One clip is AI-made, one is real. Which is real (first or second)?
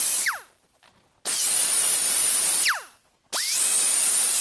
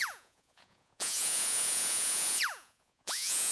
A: first